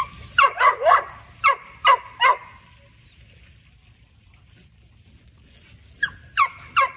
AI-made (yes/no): no